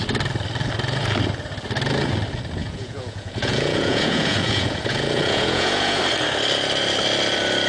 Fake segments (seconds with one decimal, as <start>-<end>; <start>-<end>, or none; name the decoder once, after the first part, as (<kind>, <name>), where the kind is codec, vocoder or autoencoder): 2.6-6.0 (vocoder, Vocos)